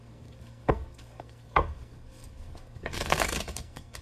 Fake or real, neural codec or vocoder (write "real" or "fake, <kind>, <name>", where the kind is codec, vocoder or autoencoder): fake, codec, SNAC